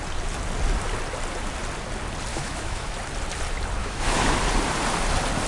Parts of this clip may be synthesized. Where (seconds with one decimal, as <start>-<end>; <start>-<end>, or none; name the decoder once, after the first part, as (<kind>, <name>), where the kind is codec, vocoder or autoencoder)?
2.3-2.9 (autoencoder, DAC-VAE); 3.8-4.4